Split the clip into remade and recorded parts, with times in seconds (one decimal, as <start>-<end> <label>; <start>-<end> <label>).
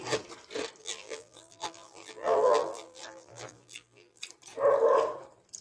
0.0-0.8 recorded; 0.8-4.2 remade; 4.2-5.6 recorded